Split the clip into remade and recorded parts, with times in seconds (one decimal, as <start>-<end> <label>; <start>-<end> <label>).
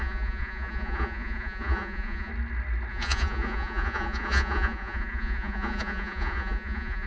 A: 0.0-2.3 remade; 2.3-2.9 recorded; 2.9-7.1 remade